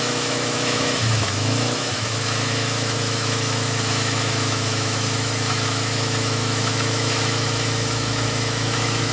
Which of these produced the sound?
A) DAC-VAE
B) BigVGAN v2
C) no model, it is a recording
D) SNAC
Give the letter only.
A